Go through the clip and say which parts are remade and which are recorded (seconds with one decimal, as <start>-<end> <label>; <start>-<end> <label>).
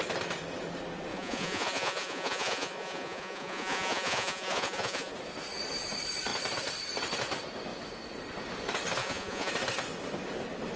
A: 0.0-1.1 recorded; 1.1-5.1 remade; 5.1-9.0 recorded; 9.0-9.5 remade; 9.5-10.8 recorded